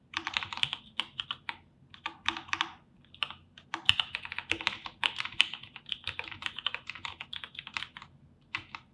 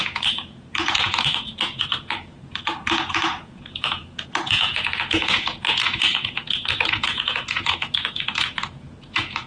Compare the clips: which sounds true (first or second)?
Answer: first